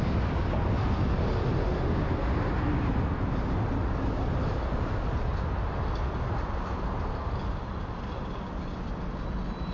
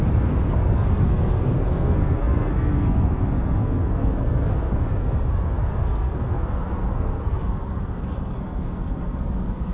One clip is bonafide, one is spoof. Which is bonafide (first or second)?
first